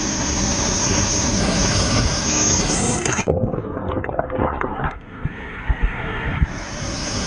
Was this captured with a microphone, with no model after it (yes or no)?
no